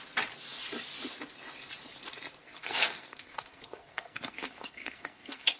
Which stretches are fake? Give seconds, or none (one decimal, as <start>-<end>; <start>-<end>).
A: 2.4-5.6